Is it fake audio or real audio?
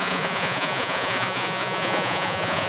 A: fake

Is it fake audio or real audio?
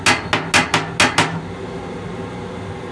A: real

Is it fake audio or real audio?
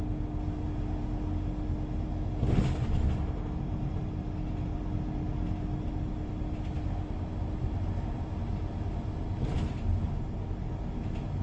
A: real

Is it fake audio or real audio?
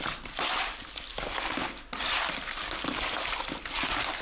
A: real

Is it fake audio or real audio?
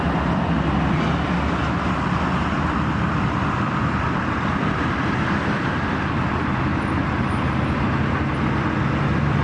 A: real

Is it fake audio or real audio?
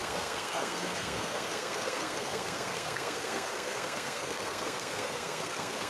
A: fake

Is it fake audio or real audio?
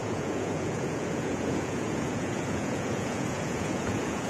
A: fake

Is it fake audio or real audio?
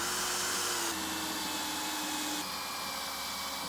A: real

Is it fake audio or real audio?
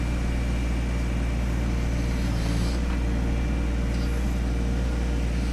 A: real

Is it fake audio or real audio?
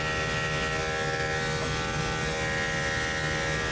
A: real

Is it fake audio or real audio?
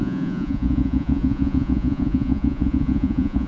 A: fake